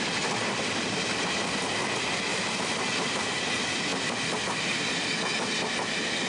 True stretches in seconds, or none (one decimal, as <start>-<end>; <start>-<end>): 0.0-2.3; 3.4-6.3